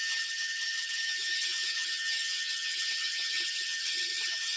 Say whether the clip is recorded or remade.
remade